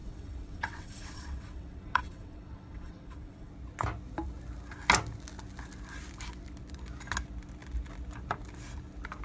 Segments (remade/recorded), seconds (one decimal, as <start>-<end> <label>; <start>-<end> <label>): 0.0-3.5 remade; 3.5-9.2 recorded